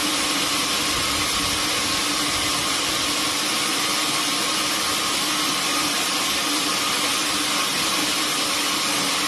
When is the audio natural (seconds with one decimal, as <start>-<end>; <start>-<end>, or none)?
0.0-9.3